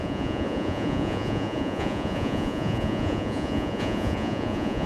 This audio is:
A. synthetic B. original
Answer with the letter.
A